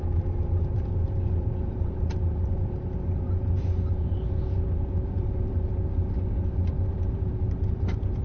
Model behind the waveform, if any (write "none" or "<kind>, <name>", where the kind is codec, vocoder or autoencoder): vocoder, BigVGAN v2